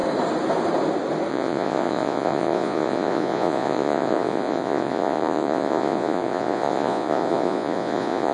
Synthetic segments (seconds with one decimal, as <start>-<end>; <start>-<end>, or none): 1.3-8.3